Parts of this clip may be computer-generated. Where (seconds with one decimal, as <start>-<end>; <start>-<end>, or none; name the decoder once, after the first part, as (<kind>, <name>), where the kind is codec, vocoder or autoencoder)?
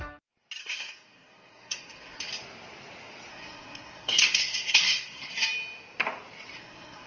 0.6-2.3 (codec, SNAC); 3.3-5.3; 6.5-7.1